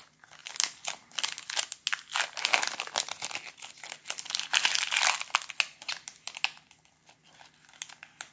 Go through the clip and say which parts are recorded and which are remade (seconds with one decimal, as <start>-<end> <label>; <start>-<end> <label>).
0.0-8.3 recorded